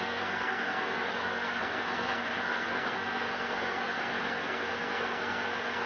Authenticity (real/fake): fake